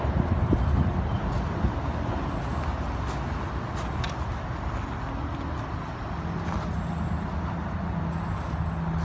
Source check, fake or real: real